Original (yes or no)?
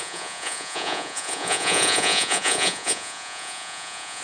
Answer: no